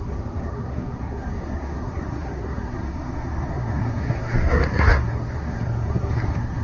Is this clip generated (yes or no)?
yes